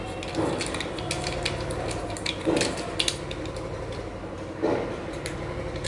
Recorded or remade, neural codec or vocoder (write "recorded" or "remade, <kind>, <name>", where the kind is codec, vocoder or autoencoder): recorded